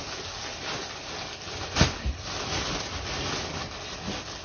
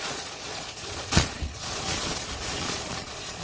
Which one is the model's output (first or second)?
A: second